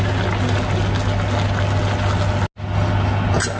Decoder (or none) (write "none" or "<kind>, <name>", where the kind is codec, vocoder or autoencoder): none